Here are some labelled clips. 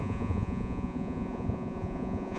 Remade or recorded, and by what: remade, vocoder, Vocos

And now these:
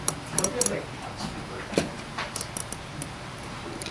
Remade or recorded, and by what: recorded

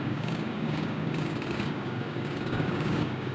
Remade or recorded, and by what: remade, codec, DAC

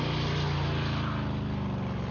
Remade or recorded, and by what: recorded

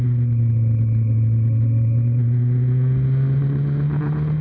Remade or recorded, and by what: recorded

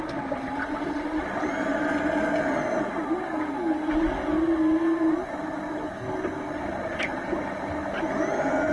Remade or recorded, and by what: recorded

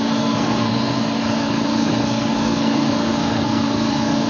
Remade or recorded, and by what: remade, codec, SNAC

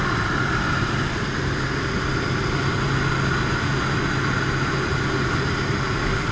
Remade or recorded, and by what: recorded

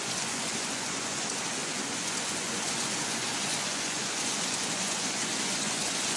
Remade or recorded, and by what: remade, vocoder, Vocos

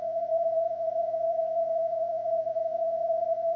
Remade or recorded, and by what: remade, vocoder, Vocos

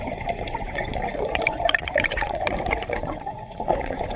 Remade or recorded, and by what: remade, vocoder, Vocos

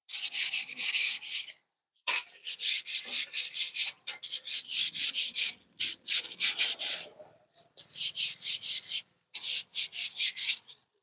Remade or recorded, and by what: remade, vocoder, BigVGAN v2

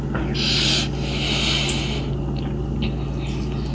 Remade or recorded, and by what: recorded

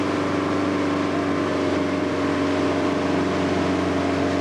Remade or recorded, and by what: recorded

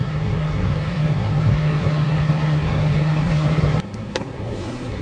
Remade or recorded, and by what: remade, codec, SNAC